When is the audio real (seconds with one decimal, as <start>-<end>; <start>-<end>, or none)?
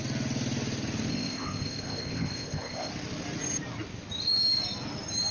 0.0-1.1; 2.9-5.3